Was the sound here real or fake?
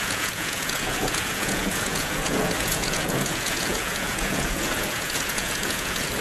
fake